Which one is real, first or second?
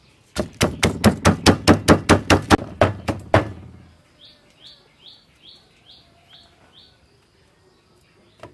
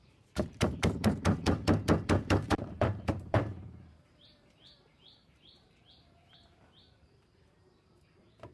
first